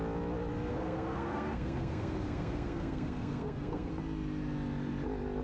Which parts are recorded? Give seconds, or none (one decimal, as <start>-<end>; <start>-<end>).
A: 0.0-0.7; 3.9-5.4

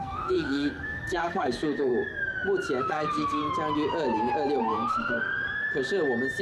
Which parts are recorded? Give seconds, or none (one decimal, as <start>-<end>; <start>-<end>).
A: 1.9-2.8; 3.4-4.6; 5.3-6.4

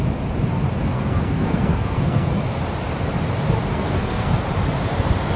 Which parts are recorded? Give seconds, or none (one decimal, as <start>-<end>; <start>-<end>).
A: 0.0-0.9; 2.4-3.7; 4.4-5.4

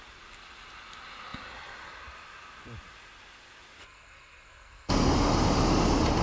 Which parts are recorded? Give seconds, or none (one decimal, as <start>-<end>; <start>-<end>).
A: 0.0-3.8; 4.9-6.2